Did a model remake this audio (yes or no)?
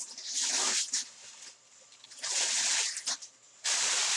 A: yes